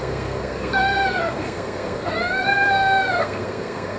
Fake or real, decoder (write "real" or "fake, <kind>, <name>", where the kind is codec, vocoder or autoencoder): fake, codec, SNAC